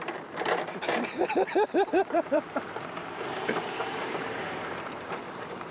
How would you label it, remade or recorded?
remade